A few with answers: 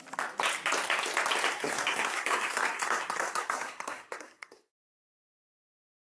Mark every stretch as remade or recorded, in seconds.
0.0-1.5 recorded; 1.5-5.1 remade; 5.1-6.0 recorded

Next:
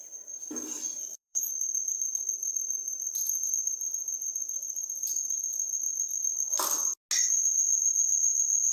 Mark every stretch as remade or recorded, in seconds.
0.0-1.0 recorded; 1.0-1.5 remade; 1.5-8.7 recorded

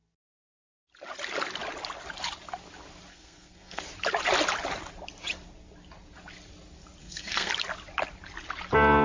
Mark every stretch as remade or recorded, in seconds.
0.0-3.1 recorded; 3.1-3.8 remade; 3.8-7.0 recorded; 7.0-7.5 remade; 7.5-9.0 recorded

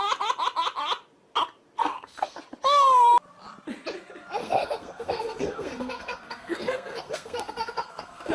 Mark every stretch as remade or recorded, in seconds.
0.0-1.8 recorded; 1.8-2.4 remade; 2.4-4.4 recorded; 4.4-8.3 remade

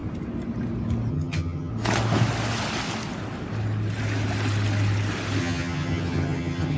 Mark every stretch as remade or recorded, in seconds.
0.0-1.1 recorded; 1.1-1.7 remade; 1.7-5.4 recorded; 5.4-6.8 remade

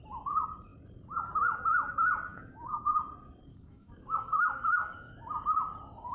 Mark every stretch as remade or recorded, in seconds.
0.0-2.3 recorded; 2.3-3.0 remade; 3.0-3.5 recorded; 3.5-5.1 remade; 5.1-6.1 recorded